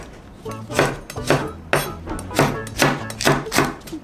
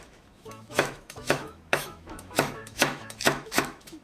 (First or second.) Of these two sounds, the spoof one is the second